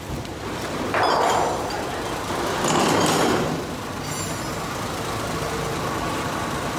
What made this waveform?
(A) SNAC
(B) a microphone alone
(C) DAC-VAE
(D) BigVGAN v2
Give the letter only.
B